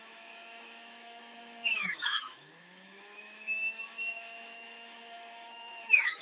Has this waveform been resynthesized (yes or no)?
yes